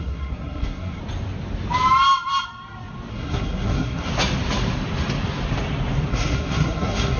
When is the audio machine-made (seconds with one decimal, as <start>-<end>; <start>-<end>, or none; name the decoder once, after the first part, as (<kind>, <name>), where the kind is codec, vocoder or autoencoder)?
0.0-1.0 (codec, SNAC); 3.1-4.1; 6.1-7.2